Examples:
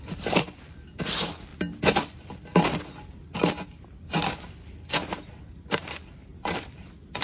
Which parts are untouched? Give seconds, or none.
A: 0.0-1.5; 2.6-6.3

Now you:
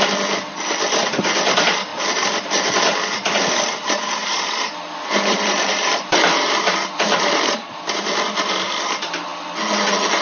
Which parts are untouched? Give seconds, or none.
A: 0.0-4.2; 8.1-10.2

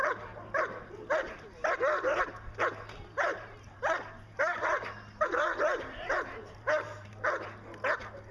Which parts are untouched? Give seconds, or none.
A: 0.0-3.2; 7.1-8.3